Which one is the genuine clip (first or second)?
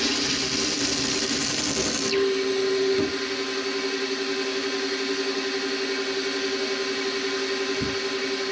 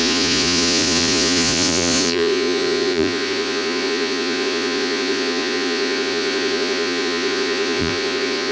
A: first